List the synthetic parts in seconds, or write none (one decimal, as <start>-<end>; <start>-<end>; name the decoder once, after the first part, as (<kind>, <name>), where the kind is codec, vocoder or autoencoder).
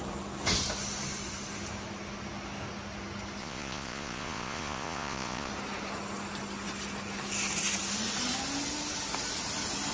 3.4-5.5 (vocoder, Vocos)